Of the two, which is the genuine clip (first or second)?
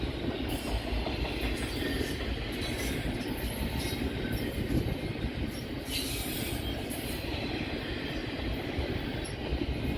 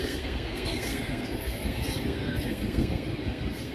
first